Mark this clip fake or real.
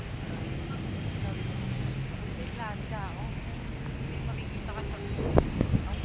real